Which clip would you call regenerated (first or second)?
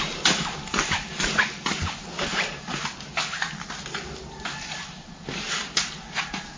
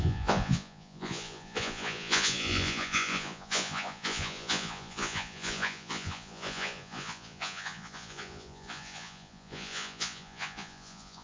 second